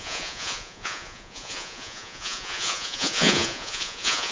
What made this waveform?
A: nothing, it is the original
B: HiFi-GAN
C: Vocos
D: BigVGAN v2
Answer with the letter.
C